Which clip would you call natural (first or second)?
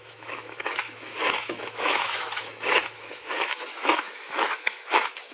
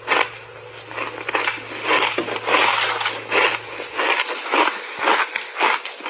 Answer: second